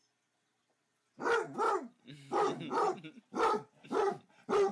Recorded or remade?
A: recorded